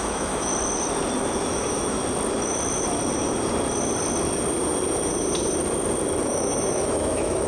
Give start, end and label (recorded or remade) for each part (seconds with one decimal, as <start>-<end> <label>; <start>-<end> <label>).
0.0-0.5 remade; 0.5-1.4 recorded; 1.4-2.0 remade; 2.0-6.2 recorded; 6.2-7.5 remade